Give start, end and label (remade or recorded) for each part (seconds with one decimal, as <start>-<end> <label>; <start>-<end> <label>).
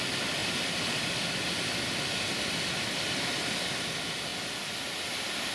0.0-5.5 recorded